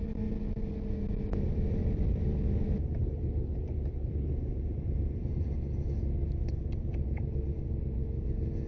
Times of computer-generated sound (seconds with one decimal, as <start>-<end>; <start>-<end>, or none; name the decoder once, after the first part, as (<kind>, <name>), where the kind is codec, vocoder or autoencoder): 3.0-4.3 (codec, HILCodec)